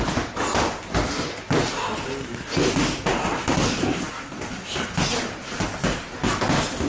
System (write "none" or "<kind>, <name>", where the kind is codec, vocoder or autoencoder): none